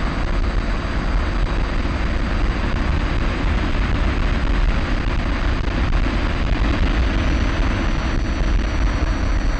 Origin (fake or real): real